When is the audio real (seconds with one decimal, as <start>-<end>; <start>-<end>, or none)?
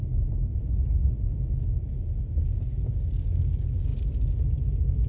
0.0-0.5; 1.1-5.1